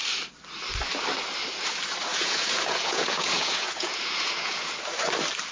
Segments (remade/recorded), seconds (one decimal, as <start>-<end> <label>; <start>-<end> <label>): 0.0-2.1 recorded; 2.1-4.8 remade; 4.8-5.5 recorded